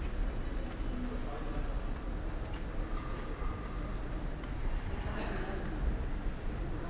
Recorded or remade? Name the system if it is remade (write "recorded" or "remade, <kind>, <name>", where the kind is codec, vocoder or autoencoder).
recorded